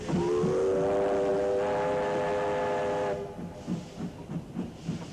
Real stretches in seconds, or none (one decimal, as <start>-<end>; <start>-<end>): 0.0-5.1